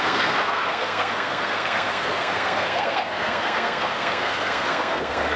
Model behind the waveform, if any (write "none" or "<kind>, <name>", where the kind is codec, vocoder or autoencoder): codec, SNAC